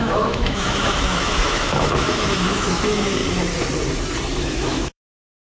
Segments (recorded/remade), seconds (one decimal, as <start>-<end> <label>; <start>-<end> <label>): 0.0-3.2 remade; 3.2-4.4 recorded; 4.4-5.4 remade